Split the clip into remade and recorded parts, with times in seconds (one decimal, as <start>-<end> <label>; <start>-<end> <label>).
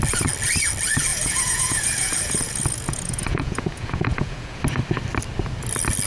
0.0-1.1 recorded; 1.1-4.6 remade; 4.6-6.1 recorded